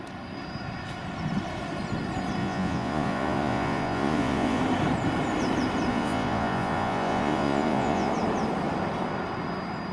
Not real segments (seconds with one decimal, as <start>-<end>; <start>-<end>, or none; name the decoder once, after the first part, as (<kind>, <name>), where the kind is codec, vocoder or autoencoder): 2.4-4.6 (vocoder, Vocos); 5.9-8.1